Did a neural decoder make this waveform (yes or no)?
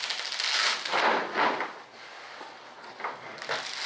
no